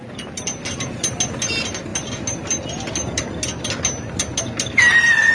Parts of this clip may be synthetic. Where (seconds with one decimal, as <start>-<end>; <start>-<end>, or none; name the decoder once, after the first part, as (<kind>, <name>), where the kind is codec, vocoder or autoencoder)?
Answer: none